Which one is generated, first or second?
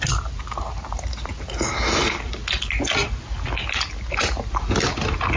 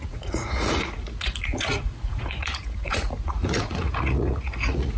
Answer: second